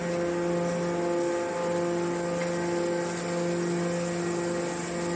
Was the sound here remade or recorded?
recorded